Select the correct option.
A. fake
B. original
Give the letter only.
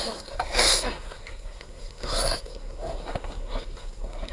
A